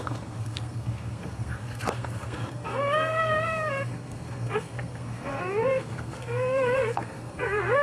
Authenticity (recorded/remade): remade